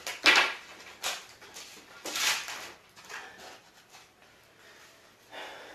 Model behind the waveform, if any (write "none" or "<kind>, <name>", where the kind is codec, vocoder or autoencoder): none